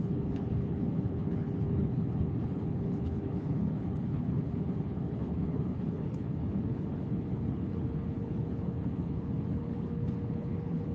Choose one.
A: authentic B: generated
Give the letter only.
B